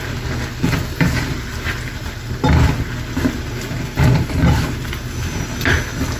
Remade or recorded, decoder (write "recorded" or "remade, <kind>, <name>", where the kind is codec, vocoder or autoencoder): recorded